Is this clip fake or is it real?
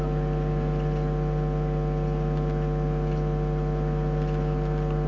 real